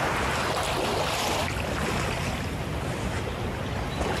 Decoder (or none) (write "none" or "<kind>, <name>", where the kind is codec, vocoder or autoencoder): none